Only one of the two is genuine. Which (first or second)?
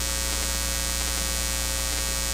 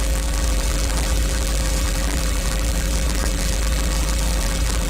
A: first